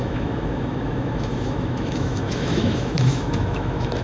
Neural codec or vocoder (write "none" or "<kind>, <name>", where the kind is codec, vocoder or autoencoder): autoencoder, DAC-VAE